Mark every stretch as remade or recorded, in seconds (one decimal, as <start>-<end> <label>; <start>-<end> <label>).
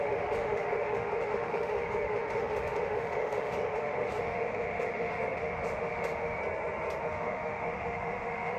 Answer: 0.0-6.4 remade; 6.4-7.0 recorded; 7.0-8.6 remade